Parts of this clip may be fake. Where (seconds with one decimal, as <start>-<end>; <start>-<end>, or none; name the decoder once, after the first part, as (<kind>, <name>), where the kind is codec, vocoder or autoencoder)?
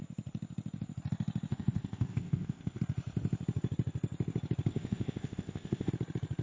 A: 1.5-2.8 (codec, ZipCodec); 4.7-5.9